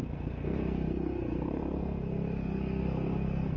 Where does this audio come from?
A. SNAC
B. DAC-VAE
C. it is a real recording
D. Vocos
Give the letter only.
A